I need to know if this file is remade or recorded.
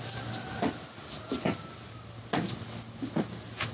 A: recorded